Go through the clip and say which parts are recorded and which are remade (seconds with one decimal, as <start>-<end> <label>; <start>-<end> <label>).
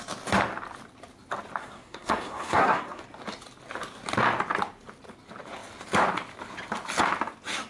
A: 0.0-1.6 recorded; 1.6-3.0 remade; 3.0-7.7 recorded